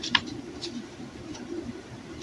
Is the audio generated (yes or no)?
yes